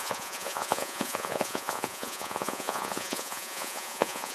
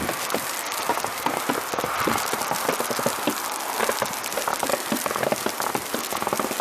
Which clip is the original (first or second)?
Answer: second